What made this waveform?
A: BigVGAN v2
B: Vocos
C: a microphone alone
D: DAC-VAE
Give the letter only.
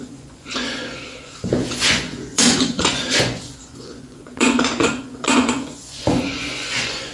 B